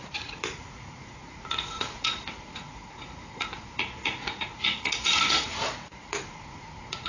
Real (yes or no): no